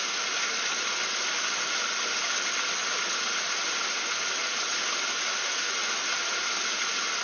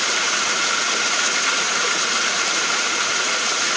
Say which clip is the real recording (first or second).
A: first